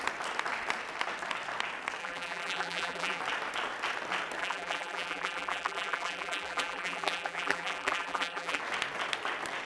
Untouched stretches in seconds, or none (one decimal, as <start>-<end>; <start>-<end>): 0.0-2.0; 3.2-4.4; 8.6-9.7